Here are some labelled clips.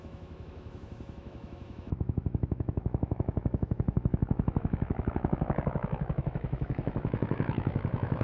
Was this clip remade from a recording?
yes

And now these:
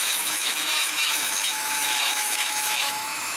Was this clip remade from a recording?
yes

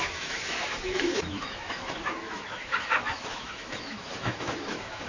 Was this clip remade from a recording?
yes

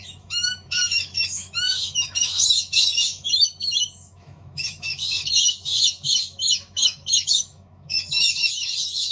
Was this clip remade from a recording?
yes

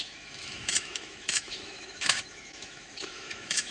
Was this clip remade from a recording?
yes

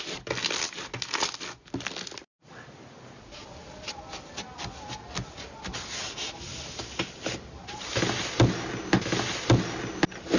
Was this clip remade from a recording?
no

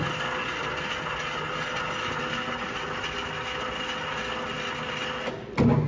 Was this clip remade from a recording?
no